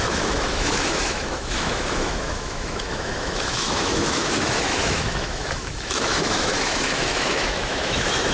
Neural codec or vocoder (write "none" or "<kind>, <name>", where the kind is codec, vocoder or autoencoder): autoencoder, DAC-VAE